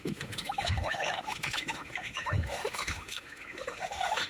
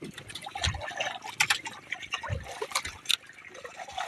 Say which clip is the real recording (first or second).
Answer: second